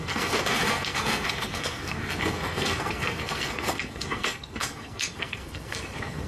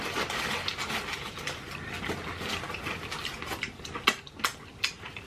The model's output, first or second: first